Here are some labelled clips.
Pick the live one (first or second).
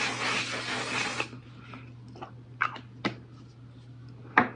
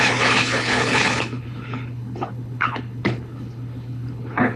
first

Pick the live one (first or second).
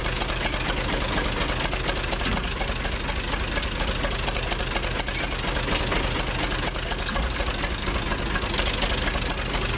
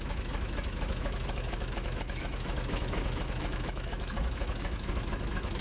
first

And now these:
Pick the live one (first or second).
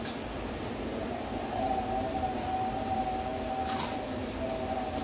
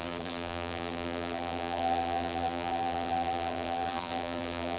first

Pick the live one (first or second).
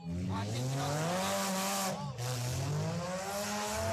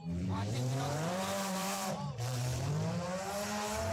first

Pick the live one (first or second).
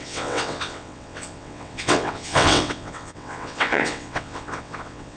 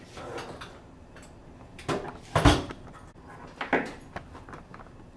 second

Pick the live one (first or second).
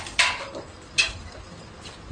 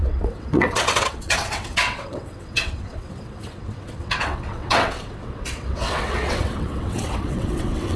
first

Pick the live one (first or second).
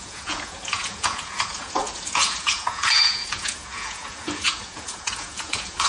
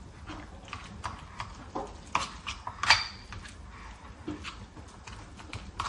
second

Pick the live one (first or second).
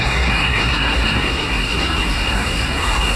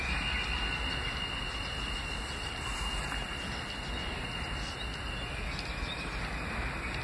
second